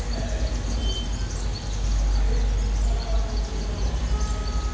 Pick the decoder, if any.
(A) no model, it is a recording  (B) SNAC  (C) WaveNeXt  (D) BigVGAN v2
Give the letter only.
A